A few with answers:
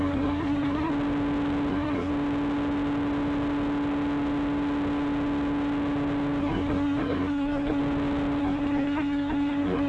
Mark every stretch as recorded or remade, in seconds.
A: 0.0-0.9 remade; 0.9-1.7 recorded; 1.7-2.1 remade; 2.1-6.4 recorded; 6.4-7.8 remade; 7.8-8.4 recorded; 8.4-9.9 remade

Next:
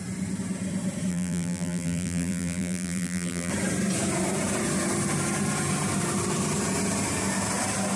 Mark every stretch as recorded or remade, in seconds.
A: 0.0-1.1 recorded; 1.1-3.5 remade; 3.5-8.0 recorded

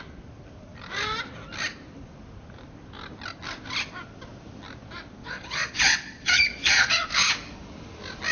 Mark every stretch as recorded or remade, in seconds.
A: 0.0-5.2 recorded; 5.2-7.1 remade; 7.1-8.3 recorded

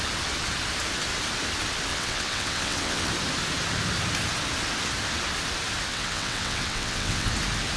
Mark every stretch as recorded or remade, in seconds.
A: 0.0-1.9 recorded; 1.9-3.1 remade; 3.1-5.9 recorded; 5.9-7.3 remade; 7.3-7.8 recorded